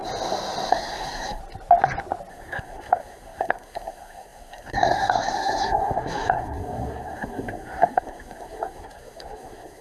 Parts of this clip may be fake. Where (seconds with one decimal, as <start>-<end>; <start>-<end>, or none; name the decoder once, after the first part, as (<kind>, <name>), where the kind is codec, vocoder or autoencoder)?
0.7-1.4 (codec, SNAC); 2.3-9.8